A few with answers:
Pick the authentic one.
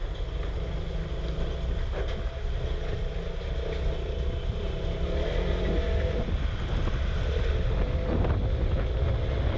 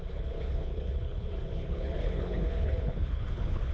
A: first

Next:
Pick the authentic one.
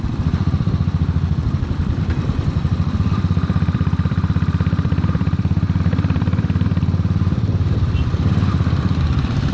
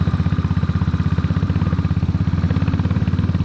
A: second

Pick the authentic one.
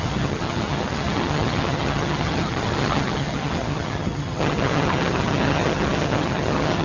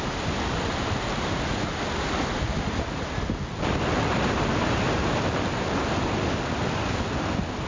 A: second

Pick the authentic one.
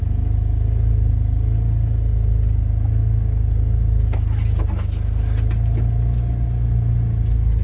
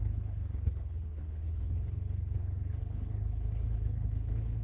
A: first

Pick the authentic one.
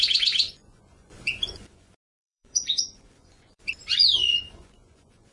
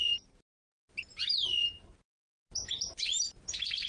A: second